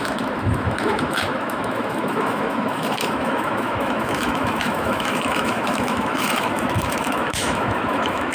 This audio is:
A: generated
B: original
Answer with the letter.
A